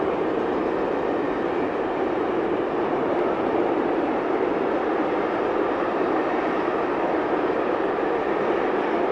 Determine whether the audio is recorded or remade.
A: recorded